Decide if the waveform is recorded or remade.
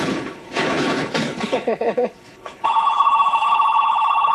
remade